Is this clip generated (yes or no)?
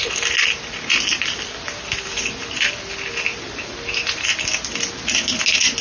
no